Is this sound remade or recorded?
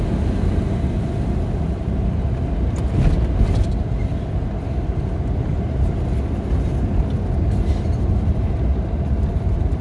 recorded